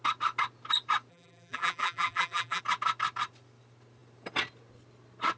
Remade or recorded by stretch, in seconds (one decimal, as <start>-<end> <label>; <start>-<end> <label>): 0.0-1.1 recorded; 1.1-2.6 remade; 2.6-5.4 recorded